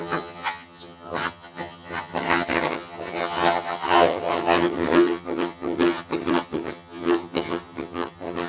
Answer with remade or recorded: remade